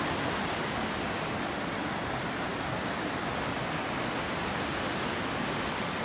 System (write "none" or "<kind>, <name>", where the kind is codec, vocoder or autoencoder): none